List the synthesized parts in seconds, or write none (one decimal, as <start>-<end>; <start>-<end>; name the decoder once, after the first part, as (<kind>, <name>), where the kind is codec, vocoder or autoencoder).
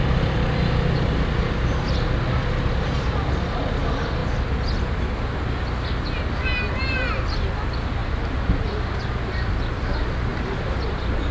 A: 10.3-11.3 (vocoder, BigVGAN v2)